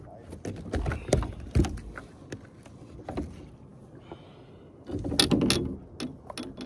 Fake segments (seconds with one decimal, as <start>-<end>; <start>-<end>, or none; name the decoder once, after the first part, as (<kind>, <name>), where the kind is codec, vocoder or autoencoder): none